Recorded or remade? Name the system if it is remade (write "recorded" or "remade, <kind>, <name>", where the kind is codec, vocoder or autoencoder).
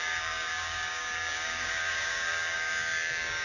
remade, codec, DAC